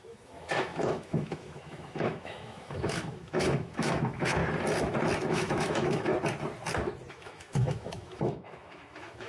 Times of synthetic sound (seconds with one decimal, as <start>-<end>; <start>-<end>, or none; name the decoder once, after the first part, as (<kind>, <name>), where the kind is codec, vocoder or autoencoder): 0.0-4.4 (autoencoder, DAC-VAE); 5.3-6.1; 7.1-9.3